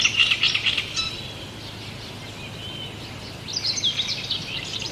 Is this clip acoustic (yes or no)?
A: yes